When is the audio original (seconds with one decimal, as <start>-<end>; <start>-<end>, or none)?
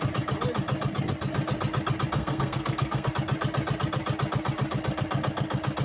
0.0-2.2; 3.1-5.8